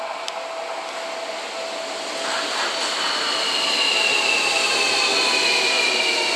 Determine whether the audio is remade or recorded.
recorded